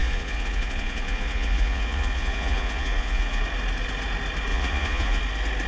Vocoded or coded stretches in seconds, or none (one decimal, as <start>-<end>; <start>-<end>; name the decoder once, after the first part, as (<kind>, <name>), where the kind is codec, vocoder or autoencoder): 0.0-3.4 (vocoder, Vocos); 4.5-5.2